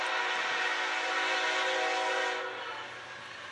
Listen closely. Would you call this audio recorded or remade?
recorded